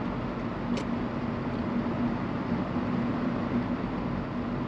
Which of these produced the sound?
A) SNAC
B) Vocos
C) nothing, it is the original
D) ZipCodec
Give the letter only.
C